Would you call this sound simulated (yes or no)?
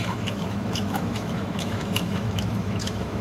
yes